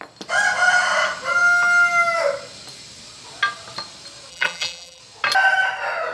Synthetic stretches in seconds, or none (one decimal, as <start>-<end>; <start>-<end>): 4.3-5.0